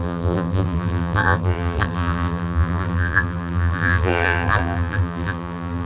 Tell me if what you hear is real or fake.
fake